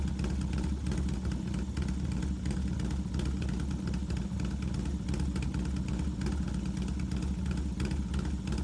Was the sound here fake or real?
real